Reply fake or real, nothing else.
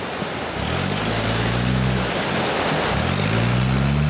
real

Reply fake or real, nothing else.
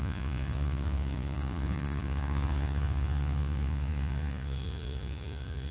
fake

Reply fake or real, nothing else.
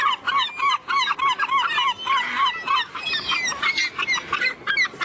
real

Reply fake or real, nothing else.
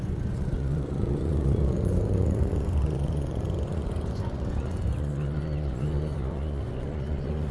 fake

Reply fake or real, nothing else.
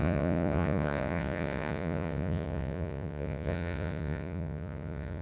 fake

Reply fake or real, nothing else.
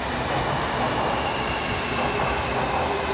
real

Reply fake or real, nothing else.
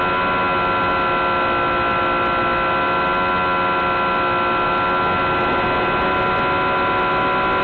real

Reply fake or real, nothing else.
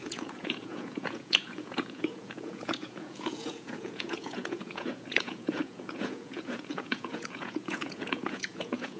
fake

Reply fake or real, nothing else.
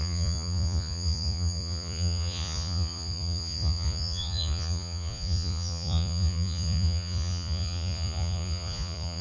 fake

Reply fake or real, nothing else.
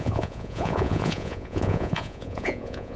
fake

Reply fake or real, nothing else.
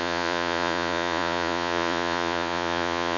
fake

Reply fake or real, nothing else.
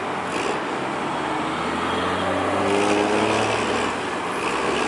real